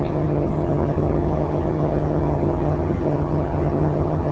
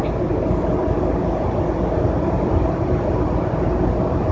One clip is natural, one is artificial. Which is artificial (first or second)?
first